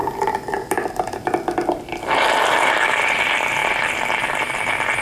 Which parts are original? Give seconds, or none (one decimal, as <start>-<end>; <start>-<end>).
3.0-5.0